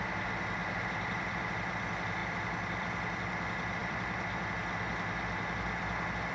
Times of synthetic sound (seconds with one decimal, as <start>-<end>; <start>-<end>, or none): 0.6-1.5; 2.2-3.3; 3.8-4.5